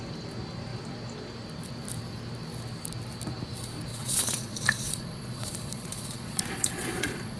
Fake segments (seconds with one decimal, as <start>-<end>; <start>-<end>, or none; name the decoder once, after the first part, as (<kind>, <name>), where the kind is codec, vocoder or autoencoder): 3.9-7.4 (vocoder, Vocos)